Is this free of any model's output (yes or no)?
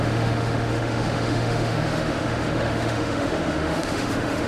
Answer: no